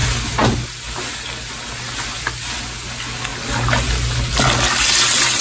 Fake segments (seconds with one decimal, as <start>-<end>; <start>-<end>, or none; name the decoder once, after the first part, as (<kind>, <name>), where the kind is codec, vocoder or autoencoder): none